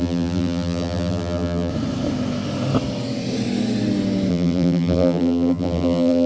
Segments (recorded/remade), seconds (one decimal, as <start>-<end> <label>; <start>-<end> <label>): 0.0-1.7 remade; 1.7-4.3 recorded; 4.3-6.3 remade